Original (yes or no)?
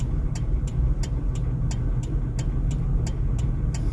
yes